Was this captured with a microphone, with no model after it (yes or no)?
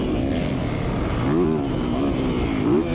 yes